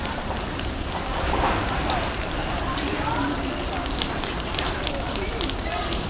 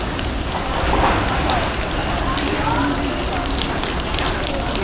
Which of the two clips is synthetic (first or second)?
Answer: first